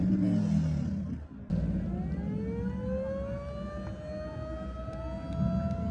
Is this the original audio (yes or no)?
yes